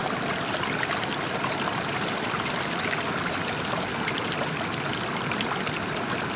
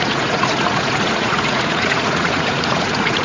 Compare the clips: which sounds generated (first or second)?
second